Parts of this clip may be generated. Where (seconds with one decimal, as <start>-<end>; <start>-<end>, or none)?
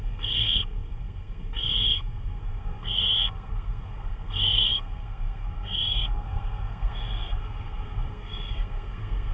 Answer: 0.0-9.3